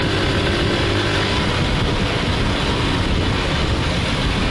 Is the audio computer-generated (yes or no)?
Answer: no